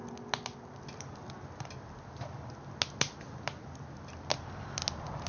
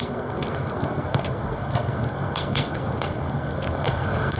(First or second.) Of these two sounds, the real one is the first